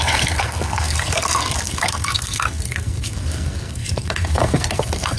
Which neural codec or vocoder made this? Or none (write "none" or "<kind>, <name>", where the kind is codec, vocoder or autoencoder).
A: codec, SNAC